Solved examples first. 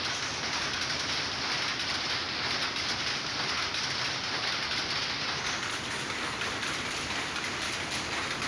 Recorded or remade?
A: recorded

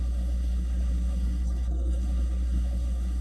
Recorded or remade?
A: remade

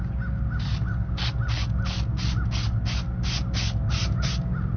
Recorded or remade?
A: recorded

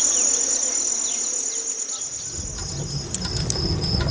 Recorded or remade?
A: recorded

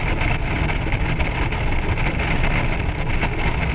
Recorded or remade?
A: recorded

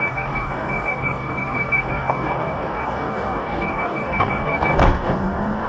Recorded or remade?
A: remade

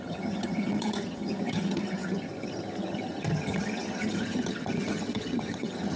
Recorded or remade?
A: remade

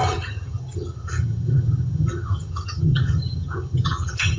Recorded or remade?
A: remade